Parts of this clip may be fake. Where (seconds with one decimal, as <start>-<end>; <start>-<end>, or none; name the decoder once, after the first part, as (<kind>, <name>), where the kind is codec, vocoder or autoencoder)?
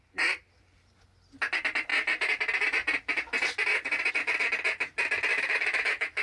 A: 5.3-6.2 (autoencoder, DAC-VAE)